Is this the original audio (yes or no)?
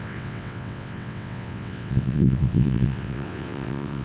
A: no